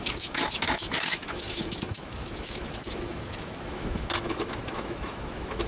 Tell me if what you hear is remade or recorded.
remade